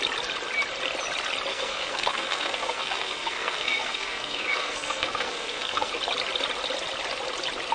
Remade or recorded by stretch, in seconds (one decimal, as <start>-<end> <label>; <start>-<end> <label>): 0.0-1.5 recorded; 1.5-5.9 remade; 5.9-7.7 recorded